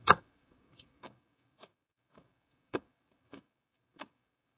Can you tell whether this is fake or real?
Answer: fake